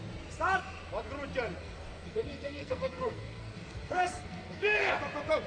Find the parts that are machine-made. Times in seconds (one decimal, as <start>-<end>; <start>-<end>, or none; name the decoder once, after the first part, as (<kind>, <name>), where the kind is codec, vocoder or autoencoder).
1.6-4.9 (codec, SNAC)